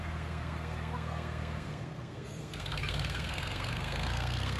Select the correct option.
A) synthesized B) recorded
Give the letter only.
A